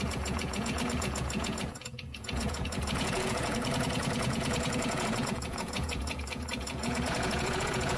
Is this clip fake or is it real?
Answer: fake